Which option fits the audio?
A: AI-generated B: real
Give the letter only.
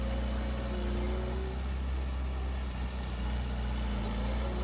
B